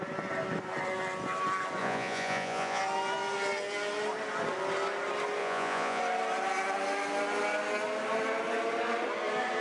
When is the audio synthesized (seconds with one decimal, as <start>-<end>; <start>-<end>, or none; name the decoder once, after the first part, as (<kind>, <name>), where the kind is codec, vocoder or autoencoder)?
1.8-2.8 (vocoder, Vocos); 5.4-6.0